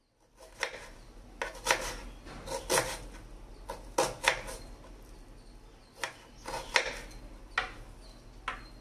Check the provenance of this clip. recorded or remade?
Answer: recorded